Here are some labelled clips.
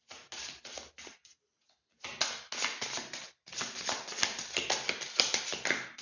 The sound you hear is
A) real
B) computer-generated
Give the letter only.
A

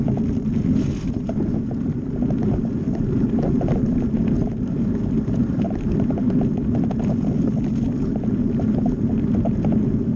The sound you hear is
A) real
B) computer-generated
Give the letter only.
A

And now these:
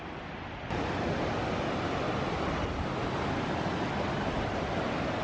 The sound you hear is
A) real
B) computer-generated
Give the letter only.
A